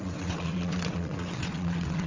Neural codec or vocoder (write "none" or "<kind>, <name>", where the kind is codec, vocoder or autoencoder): vocoder, WaveNeXt